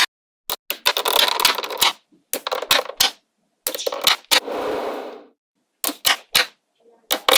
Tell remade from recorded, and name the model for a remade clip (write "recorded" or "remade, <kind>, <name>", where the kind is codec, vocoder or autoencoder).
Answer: recorded